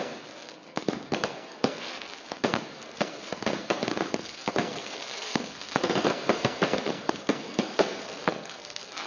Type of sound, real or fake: fake